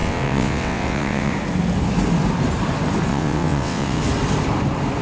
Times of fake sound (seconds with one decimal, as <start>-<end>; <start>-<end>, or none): 0.0-1.3; 3.1-4.0